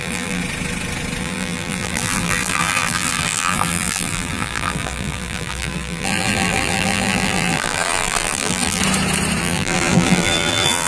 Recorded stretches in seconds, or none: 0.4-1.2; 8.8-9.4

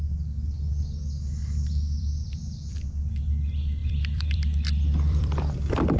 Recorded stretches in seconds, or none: 0.0-1.4; 2.8-3.8

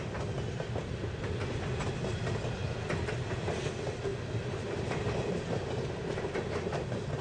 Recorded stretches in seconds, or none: 0.0-4.1